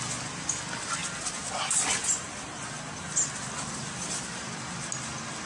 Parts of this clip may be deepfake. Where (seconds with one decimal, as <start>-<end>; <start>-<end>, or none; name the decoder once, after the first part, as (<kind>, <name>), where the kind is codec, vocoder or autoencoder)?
none